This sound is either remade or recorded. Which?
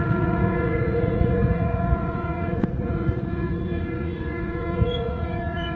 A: remade